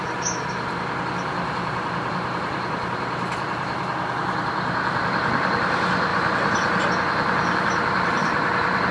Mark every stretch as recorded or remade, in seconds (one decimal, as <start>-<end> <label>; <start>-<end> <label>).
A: 0.0-6.1 recorded; 6.1-6.9 remade; 6.9-8.9 recorded